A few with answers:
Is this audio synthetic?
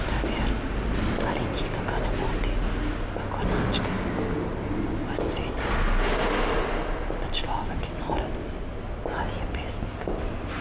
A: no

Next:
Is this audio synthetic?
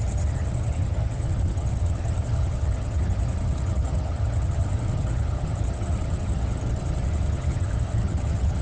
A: yes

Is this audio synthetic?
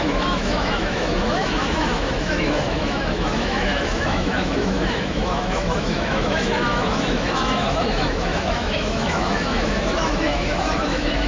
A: yes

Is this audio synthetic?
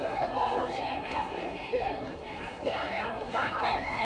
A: yes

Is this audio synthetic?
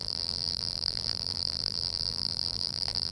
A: yes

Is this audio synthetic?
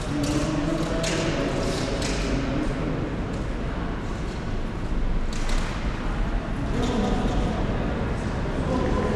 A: no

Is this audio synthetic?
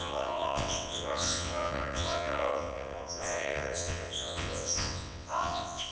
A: yes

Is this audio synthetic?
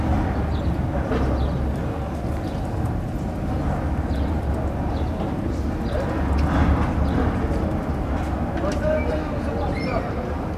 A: no